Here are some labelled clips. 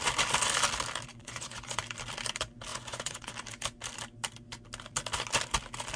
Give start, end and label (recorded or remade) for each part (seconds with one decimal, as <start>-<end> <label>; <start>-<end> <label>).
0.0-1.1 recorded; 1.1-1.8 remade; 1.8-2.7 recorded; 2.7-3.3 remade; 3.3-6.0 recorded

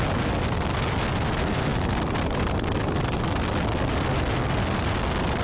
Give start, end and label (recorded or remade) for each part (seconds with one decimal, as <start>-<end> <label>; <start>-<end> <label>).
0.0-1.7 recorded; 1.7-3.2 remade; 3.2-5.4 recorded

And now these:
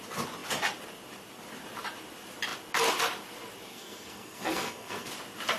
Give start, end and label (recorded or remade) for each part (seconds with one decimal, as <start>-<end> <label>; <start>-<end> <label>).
0.0-3.7 recorded; 3.7-5.1 remade; 5.1-5.6 recorded

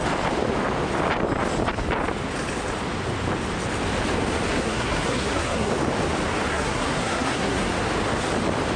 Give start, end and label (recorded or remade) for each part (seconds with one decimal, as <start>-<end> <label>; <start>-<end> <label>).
0.0-4.5 recorded; 4.5-5.7 remade; 5.7-6.5 recorded; 6.5-7.7 remade; 7.7-8.8 recorded

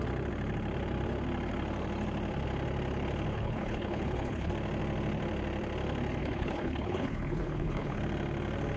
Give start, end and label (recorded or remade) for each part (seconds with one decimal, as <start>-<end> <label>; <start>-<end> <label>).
0.0-3.3 recorded; 3.3-4.5 remade; 4.5-6.2 recorded; 6.2-8.0 remade; 8.0-8.8 recorded